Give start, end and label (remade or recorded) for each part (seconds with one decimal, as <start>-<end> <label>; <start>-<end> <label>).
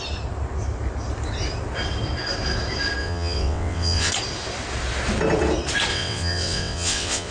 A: 0.0-3.0 recorded; 3.0-4.1 remade; 4.1-5.9 recorded; 5.9-7.3 remade